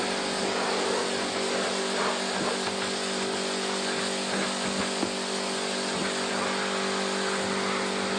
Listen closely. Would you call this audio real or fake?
real